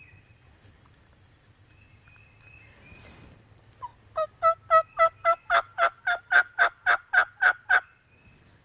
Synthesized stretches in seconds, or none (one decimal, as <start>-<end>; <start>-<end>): none